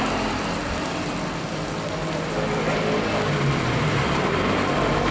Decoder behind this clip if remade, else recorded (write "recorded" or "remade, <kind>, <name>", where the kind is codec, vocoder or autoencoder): recorded